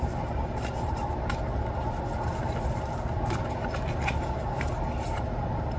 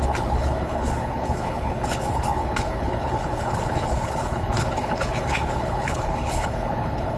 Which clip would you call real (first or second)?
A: first